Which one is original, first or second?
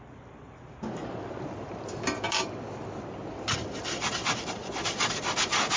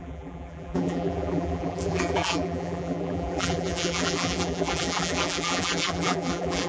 first